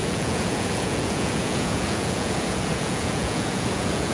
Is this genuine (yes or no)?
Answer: no